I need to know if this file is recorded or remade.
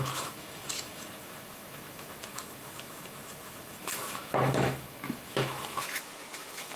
remade